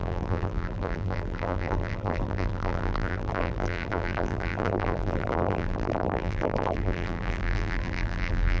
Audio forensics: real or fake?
fake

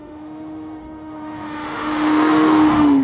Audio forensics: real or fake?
fake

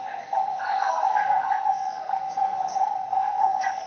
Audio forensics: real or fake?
fake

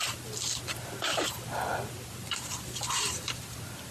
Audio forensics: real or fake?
real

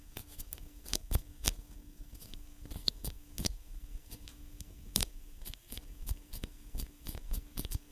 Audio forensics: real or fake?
fake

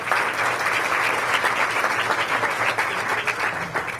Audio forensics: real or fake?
real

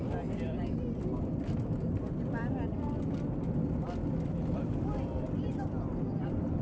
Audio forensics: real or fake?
real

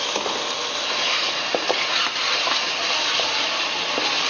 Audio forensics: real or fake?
real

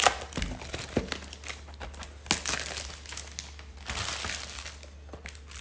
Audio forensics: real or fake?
real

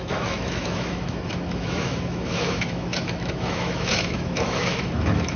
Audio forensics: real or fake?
fake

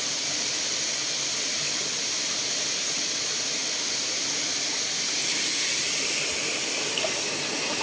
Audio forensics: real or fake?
real